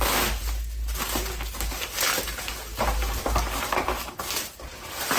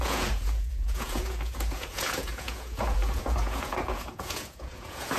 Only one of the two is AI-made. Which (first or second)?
second